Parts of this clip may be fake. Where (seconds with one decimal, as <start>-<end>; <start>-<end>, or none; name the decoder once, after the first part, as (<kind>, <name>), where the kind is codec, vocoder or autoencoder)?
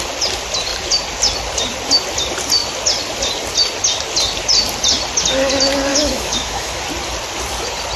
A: 5.9-6.8 (autoencoder, DAC-VAE)